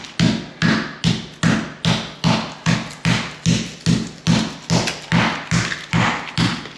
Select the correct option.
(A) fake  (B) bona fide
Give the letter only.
B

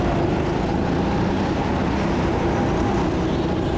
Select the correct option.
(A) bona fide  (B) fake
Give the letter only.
A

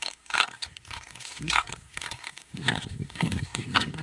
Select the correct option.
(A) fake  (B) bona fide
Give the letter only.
A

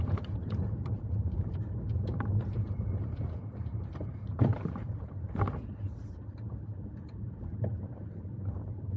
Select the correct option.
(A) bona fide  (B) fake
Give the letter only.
B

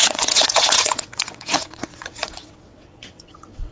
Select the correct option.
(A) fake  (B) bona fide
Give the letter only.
A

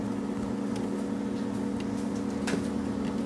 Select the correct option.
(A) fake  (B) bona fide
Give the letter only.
B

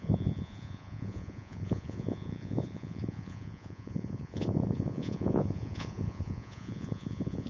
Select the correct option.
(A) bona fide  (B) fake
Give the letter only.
B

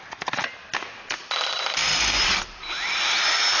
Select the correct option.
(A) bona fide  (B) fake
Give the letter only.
A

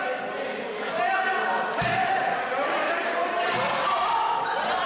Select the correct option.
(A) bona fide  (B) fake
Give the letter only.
A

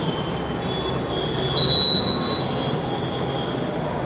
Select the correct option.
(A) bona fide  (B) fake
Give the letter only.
A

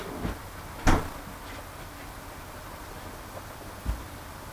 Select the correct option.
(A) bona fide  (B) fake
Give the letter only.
A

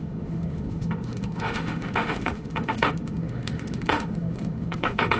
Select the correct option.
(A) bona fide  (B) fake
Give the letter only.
B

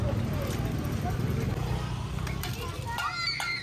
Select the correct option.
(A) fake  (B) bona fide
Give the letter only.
B